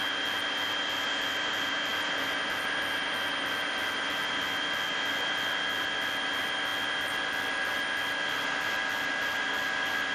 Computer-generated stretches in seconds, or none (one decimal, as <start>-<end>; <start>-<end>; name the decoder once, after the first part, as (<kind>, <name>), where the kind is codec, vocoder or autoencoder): none